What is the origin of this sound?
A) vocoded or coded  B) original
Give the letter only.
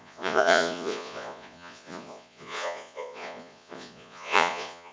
A